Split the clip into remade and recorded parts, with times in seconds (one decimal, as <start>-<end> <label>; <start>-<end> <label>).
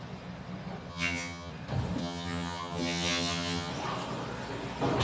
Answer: 0.0-0.9 recorded; 0.9-1.5 remade; 1.5-2.0 recorded; 2.0-3.7 remade; 3.7-5.0 recorded